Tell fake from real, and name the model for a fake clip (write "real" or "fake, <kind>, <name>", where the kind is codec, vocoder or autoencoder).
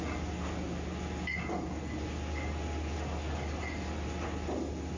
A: real